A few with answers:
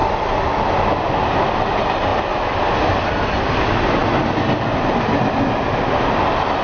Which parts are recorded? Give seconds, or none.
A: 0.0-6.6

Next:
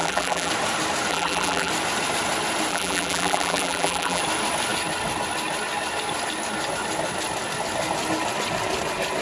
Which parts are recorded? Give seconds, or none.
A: 0.5-1.1; 1.7-2.7; 4.2-9.2

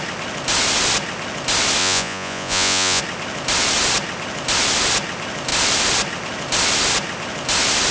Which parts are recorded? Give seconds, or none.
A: 0.0-1.8; 3.0-7.9

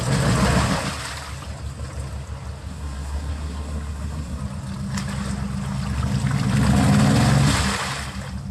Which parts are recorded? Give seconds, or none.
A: 0.0-2.7; 4.4-8.5

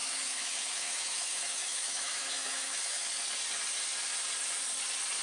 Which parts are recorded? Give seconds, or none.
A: 3.1-5.2

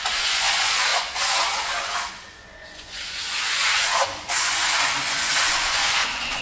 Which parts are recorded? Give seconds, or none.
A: none

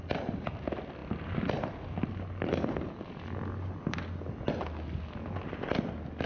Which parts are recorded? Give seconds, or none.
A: 0.0-6.3